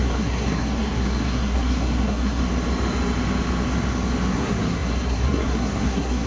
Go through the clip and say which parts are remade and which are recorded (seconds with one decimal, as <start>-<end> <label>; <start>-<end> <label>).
0.0-2.4 remade; 2.4-4.3 recorded; 4.3-6.3 remade